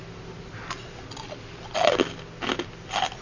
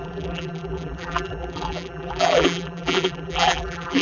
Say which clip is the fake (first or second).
second